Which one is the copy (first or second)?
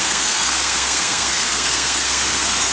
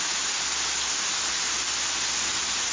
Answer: first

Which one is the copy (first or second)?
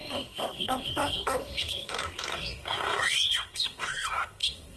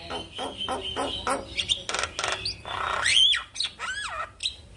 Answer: first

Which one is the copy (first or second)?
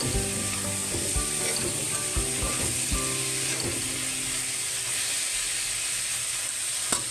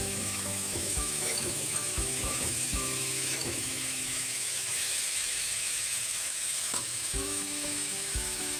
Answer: second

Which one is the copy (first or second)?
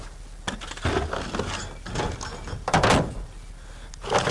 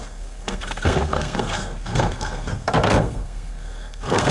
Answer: second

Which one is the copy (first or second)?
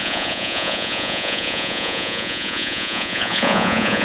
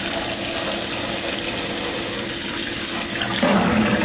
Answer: first